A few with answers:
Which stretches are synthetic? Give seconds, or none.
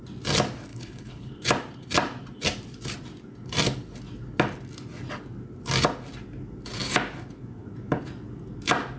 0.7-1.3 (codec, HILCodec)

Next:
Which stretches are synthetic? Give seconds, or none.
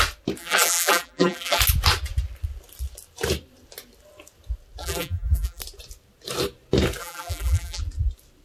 0.4-1.6 (vocoder, BigVGAN v2); 4.8-5.6; 7.0-7.8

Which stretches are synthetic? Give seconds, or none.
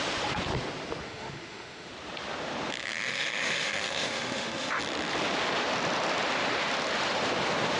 1.0-1.9 (autoencoder, DAC-VAE); 2.8-4.8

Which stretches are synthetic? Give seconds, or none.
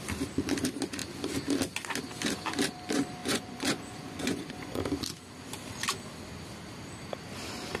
3.2-4.8 (vocoder, Vocos)